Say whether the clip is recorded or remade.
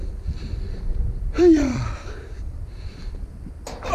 recorded